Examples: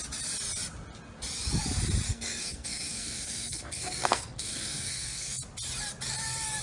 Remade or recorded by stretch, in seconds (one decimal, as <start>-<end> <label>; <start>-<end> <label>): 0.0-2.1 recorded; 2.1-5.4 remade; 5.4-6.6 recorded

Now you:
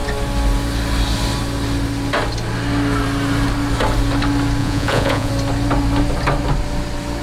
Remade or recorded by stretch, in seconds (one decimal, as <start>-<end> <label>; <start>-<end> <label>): 0.0-4.6 recorded; 4.6-5.3 remade; 5.3-7.2 recorded

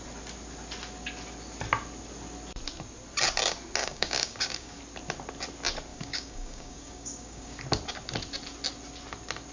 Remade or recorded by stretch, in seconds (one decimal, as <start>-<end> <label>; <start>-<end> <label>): 0.0-3.8 recorded; 3.8-4.8 remade; 4.8-5.9 recorded; 5.9-7.6 remade; 7.6-9.5 recorded

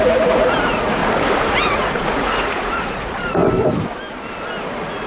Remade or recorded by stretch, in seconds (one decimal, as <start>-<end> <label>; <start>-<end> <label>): 0.0-1.0 remade; 1.0-1.5 recorded; 1.5-3.4 remade; 3.4-4.6 recorded; 4.6-5.1 remade